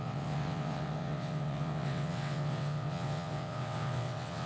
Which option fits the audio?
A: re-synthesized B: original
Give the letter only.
A